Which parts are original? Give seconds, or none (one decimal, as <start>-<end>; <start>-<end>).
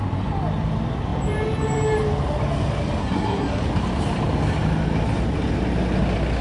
0.0-3.0; 3.6-6.4